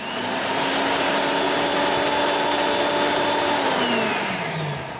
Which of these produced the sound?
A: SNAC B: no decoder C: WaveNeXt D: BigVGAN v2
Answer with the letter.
B